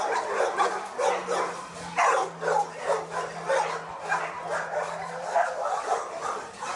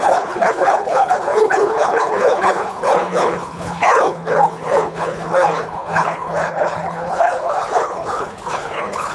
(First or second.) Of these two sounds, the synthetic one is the second